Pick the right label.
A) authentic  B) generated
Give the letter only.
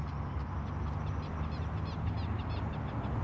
A